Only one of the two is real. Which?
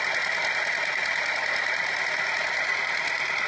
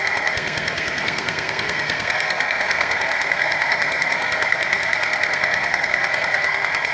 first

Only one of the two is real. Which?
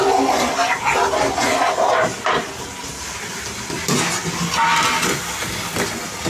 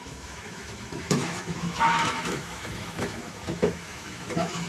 first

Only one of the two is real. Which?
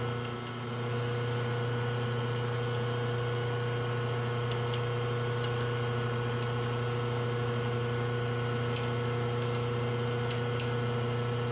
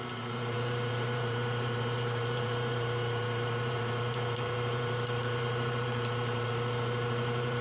first